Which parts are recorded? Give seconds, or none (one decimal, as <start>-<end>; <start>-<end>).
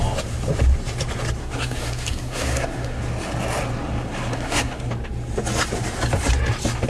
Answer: 0.0-1.4; 3.0-4.3; 4.9-6.9